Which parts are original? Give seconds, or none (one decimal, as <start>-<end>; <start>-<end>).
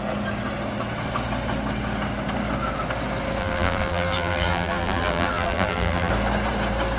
0.0-3.4; 6.1-7.0